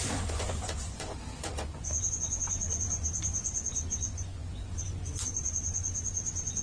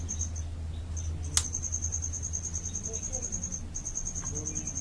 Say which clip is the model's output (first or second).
first